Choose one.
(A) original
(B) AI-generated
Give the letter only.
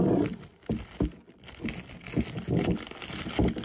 A